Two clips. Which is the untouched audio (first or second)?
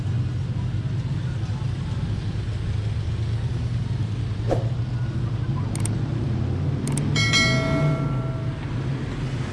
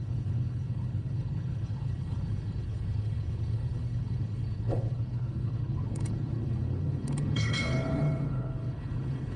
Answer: first